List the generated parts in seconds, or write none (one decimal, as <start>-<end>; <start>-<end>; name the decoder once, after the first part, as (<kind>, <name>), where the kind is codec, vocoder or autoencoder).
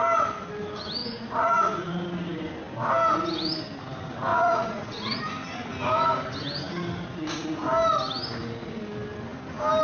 1.0-1.9 (vocoder, Vocos); 4.3-5.2